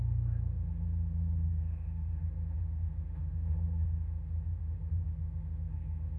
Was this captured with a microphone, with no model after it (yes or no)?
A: no